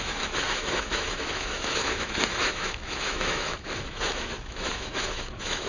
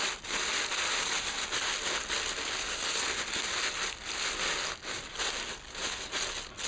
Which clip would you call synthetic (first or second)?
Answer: first